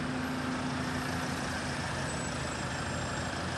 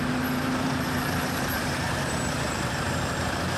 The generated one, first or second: second